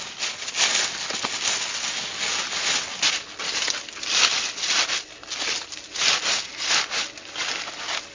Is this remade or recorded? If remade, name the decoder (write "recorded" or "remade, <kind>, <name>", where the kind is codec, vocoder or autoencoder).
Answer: recorded